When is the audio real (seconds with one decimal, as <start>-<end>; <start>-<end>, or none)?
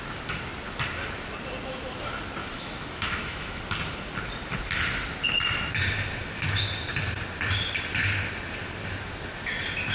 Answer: 0.0-2.4; 3.6-9.9